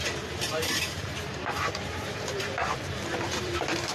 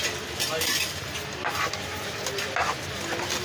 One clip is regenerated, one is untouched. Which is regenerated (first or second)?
first